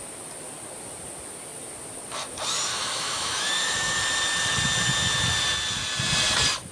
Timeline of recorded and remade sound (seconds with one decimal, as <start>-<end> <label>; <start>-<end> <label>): 0.0-2.7 recorded; 2.7-4.0 remade; 4.0-6.7 recorded